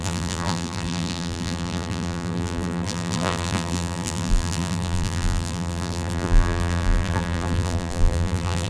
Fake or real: fake